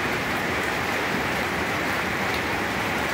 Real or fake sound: fake